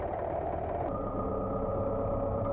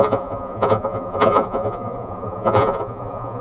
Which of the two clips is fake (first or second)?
second